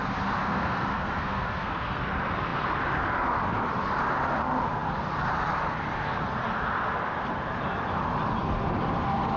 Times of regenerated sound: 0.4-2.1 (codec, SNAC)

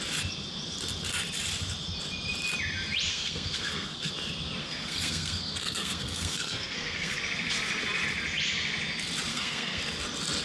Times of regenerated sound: 3.1-4.1 (codec, SNAC); 4.6-7.2; 9.3-9.8

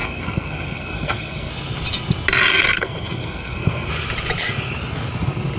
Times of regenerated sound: 0.0-1.5 (codec, SNAC); 2.5-3.9

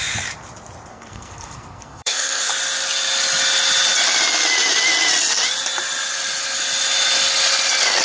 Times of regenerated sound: 0.9-2.5 (codec, SNAC)